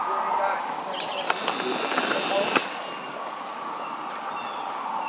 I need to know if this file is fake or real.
real